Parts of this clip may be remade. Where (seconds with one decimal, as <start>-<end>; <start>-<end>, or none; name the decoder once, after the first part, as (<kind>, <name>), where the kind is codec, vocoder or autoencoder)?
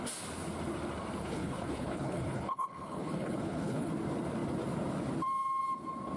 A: 1.2-3.9 (codec, HILCodec)